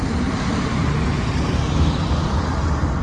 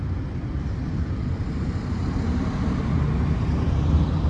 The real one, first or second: second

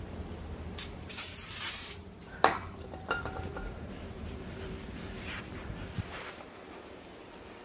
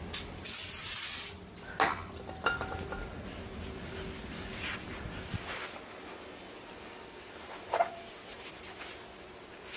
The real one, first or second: second